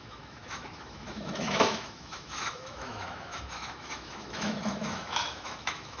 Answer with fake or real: fake